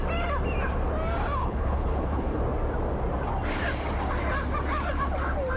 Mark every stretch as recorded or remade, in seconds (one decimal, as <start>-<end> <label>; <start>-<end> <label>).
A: 0.0-1.4 recorded; 1.4-2.4 remade; 2.4-5.6 recorded